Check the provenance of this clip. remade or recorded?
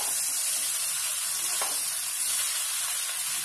recorded